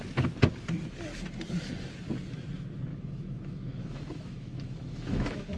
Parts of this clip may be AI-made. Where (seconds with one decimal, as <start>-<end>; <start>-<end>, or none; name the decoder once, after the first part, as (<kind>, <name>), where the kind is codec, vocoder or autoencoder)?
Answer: 2.9-5.6 (autoencoder, DAC-VAE)